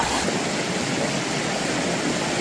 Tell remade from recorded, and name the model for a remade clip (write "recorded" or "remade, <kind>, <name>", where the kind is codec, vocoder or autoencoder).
recorded